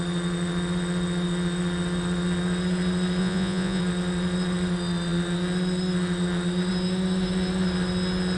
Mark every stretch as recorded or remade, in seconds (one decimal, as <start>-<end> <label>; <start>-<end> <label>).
0.0-3.2 recorded; 3.2-3.8 remade; 3.8-8.4 recorded